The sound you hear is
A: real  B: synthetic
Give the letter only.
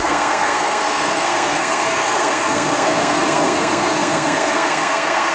B